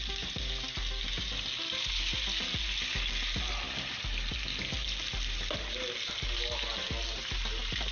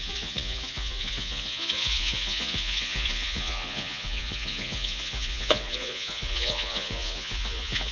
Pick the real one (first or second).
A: first